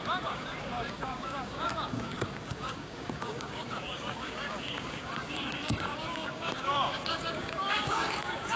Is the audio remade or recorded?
remade